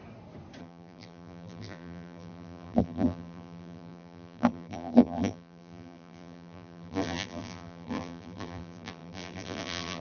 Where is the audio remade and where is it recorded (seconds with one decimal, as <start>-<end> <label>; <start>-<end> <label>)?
0.0-0.6 recorded; 0.6-10.0 remade